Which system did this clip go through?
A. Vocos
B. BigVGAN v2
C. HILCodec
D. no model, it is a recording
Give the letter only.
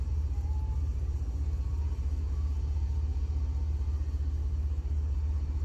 D